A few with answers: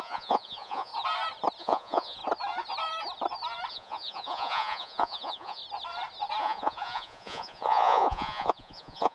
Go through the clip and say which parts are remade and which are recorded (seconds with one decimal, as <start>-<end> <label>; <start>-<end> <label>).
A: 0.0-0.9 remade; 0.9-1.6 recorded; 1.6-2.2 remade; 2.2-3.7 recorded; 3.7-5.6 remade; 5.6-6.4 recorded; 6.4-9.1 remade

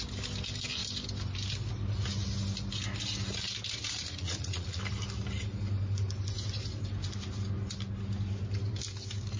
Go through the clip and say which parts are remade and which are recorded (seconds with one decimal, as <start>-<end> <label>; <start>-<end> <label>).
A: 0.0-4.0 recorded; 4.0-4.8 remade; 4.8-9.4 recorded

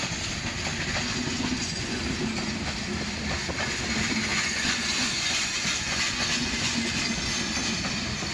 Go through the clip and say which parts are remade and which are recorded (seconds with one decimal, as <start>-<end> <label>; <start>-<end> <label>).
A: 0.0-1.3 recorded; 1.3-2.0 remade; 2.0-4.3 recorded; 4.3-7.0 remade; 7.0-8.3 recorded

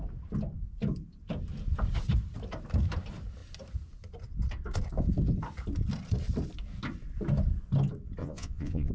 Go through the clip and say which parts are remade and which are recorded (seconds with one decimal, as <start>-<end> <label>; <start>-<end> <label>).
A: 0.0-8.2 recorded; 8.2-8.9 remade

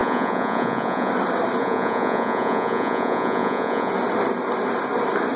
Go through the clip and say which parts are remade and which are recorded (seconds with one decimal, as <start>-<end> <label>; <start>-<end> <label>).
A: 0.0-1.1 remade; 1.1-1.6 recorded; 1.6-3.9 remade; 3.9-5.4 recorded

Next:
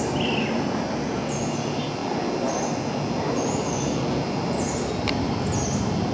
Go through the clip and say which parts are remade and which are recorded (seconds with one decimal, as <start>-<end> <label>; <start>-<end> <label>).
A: 0.0-6.1 recorded